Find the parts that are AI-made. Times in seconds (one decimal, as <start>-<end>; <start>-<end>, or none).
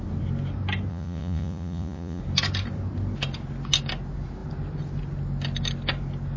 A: 0.9-2.2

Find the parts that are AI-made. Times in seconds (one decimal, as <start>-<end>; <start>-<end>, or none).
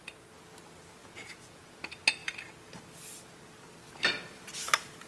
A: 1.0-1.8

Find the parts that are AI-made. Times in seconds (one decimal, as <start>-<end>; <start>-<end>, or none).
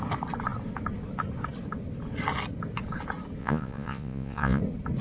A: 3.4-4.6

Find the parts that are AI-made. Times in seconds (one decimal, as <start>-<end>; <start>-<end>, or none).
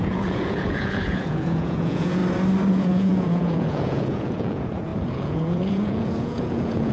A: 0.0-2.2; 2.7-6.9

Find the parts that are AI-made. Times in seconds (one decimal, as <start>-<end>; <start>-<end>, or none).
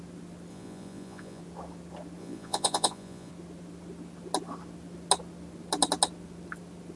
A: 0.5-1.4; 2.2-3.3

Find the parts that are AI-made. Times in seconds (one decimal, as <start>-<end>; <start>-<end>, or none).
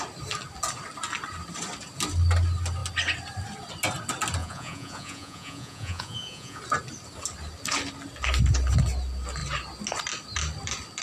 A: 4.4-6.6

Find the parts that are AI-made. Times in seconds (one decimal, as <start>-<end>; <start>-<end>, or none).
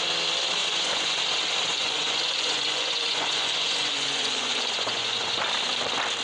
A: 0.6-1.2; 1.7-5.4